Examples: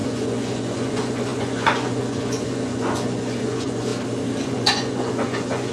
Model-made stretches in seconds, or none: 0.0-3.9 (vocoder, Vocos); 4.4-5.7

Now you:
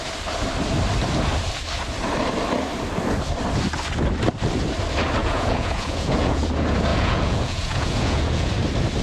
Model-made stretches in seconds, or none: 5.2-6.5 (vocoder, Vocos); 6.9-8.5

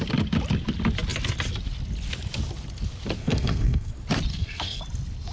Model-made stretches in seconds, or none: 3.2-3.9 (codec, SNAC); 4.3-4.8

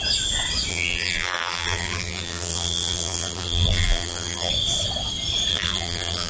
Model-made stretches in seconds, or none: 0.7-4.5 (vocoder, BigVGAN v2); 5.5-6.3

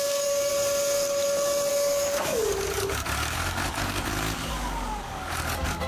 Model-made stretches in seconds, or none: 0.0-0.5 (codec, DAC); 1.7-5.9

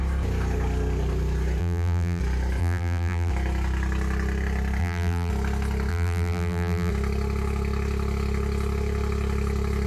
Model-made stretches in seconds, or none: 1.6-2.2 (vocoder, BigVGAN v2); 2.6-3.3; 4.8-5.3; 5.9-6.9

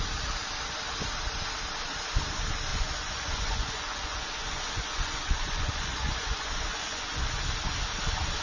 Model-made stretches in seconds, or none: 2.7-7.4 (vocoder, Vocos)

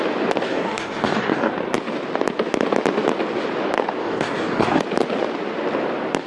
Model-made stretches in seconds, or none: 0.5-1.5 (codec, DAC); 4.0-4.8